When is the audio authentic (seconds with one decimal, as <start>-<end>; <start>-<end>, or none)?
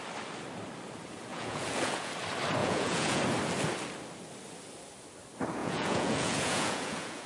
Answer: 0.0-1.3; 2.1-2.6; 3.2-5.6